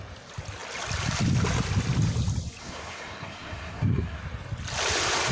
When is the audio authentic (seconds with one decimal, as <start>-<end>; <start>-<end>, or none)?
0.0-2.6; 4.2-5.3